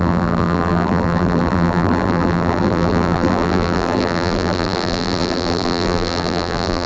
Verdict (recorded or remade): remade